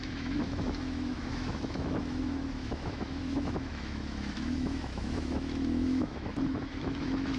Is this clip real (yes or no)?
no